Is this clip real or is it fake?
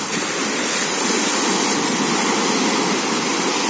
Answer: real